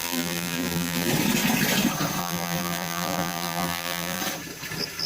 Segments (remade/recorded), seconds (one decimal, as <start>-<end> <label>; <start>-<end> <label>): 0.0-1.1 remade; 1.1-2.2 recorded; 2.2-4.2 remade; 4.2-5.1 recorded